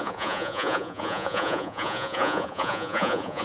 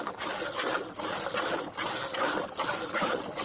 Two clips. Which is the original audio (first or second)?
second